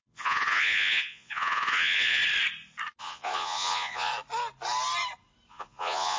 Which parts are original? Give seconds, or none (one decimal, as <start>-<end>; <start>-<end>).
2.2-3.0; 4.1-5.5